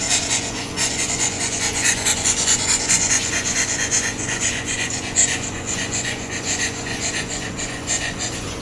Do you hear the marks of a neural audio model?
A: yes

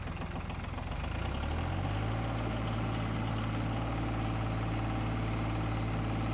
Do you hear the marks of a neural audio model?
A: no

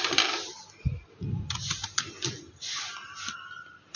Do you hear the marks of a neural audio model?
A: no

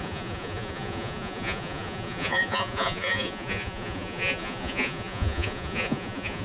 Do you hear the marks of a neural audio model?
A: yes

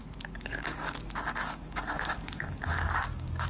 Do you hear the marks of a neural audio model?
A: yes